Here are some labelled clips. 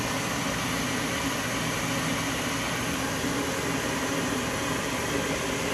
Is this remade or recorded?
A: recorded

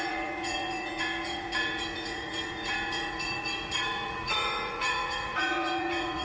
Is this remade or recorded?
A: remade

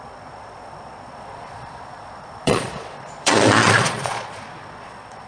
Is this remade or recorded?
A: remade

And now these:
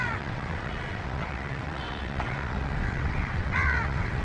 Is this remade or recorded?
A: remade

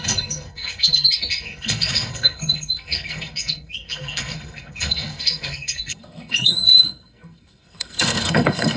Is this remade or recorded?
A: remade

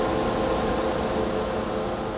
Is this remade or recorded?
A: recorded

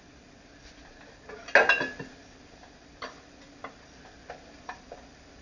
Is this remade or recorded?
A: recorded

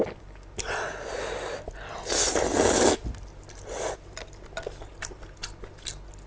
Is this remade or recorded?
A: recorded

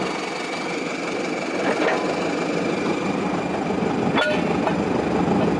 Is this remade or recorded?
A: recorded